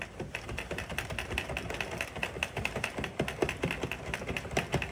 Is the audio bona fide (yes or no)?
yes